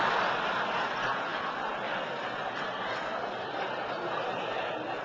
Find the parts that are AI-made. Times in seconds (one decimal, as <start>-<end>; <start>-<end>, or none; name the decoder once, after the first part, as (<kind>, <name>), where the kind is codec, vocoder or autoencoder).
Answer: none